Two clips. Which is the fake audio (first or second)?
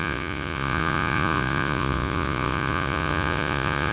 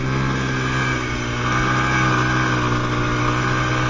first